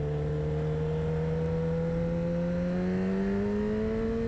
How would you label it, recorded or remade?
recorded